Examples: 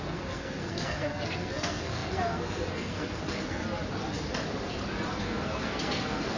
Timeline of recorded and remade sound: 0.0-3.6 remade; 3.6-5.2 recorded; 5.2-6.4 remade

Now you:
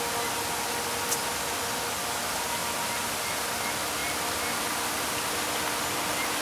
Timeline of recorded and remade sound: 0.0-6.4 recorded

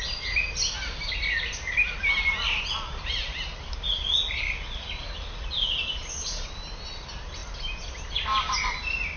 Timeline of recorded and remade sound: 0.0-9.2 recorded

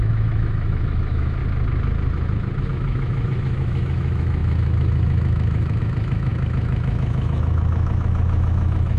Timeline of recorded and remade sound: 0.0-1.4 remade; 1.4-2.6 recorded; 2.6-9.0 remade

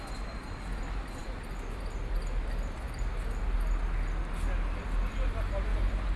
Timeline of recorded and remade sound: 0.0-6.2 recorded

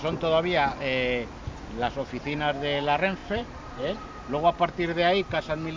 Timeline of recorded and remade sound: 0.0-3.2 recorded; 3.2-4.1 remade; 4.1-5.8 recorded

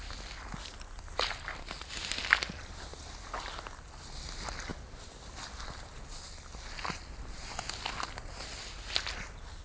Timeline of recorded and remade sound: 0.0-9.6 recorded

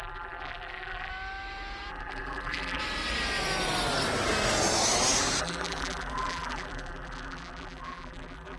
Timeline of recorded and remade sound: 0.0-1.1 remade; 1.1-1.9 recorded; 1.9-2.8 remade; 2.8-5.4 recorded; 5.4-8.6 remade